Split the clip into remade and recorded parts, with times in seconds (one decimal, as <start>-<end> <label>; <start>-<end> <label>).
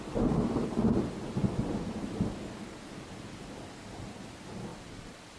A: 0.0-5.4 recorded